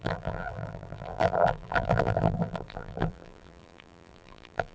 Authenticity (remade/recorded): remade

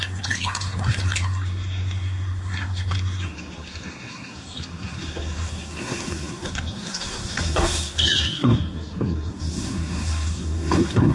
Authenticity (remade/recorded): remade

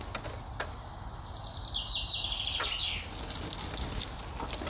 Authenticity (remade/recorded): recorded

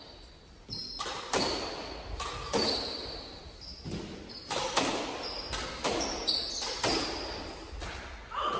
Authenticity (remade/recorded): recorded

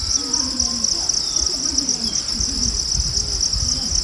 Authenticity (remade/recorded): recorded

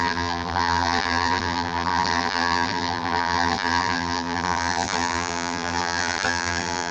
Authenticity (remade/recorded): remade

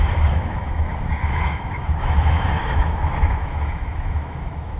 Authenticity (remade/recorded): remade